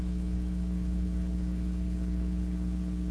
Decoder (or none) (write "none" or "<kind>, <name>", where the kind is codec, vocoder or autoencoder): codec, HILCodec